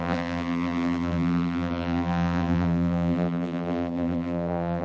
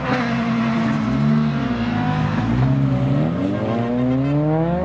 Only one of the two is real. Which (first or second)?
second